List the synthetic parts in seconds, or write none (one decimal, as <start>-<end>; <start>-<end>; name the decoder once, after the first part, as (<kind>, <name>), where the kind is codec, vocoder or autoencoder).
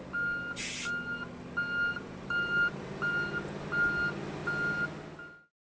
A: 1.9-3.1 (vocoder, BigVGAN v2)